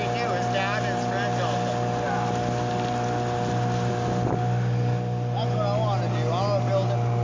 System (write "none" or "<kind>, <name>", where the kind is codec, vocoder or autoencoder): none